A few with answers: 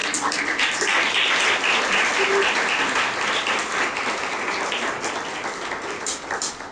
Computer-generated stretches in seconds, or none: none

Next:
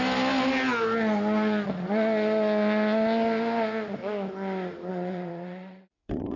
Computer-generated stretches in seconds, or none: 4.9-6.4 (vocoder, WaveNeXt)

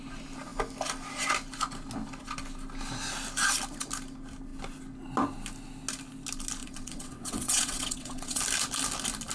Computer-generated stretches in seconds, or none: 6.6-8.4 (vocoder, WaveNeXt)

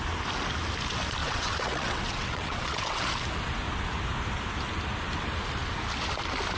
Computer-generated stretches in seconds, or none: 1.2-3.1 (vocoder, WaveNeXt)

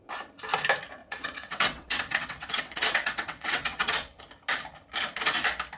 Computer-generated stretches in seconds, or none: 1.0-4.2 (vocoder, WaveNeXt)